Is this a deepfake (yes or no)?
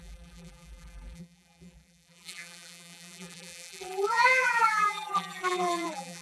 yes